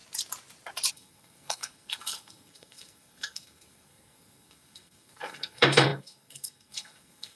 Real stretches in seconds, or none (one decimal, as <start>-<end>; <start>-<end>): 0.0-0.9